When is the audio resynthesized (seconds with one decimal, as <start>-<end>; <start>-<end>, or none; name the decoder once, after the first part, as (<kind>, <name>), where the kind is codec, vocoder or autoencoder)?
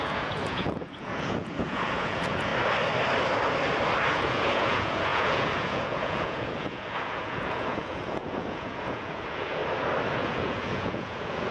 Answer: 0.0-2.5 (vocoder, Vocos); 4.1-9.6; 10.1-11.5